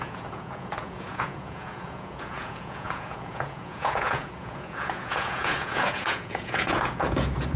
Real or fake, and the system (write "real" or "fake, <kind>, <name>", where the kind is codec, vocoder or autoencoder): fake, vocoder, Vocos